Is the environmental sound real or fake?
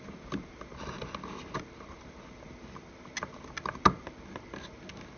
real